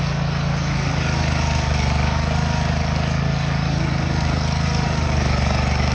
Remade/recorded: remade